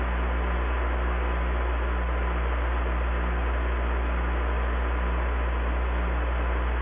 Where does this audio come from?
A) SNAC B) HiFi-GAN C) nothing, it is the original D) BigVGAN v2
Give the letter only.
C